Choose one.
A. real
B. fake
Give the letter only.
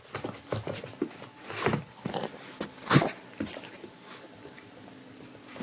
A